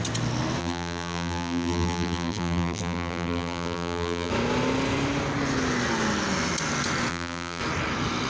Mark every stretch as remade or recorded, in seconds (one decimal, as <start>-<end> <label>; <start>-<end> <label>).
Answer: 0.0-0.6 recorded; 0.6-4.3 remade; 4.3-7.1 recorded; 7.1-7.6 remade; 7.6-8.3 recorded